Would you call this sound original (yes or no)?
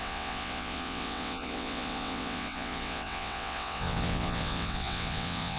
no